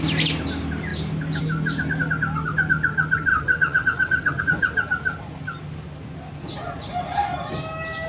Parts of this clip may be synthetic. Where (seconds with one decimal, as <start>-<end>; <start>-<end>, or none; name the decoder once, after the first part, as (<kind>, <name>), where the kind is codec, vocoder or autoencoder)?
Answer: 3.3-4.4 (vocoder, WaveNeXt)